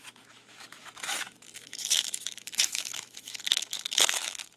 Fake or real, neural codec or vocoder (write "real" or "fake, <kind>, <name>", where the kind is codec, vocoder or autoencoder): fake, autoencoder, DAC-VAE